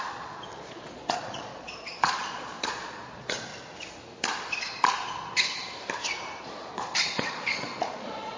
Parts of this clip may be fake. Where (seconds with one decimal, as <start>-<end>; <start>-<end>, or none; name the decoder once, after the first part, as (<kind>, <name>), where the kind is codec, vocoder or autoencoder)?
0.0-3.5 (vocoder, Vocos); 6.4-8.4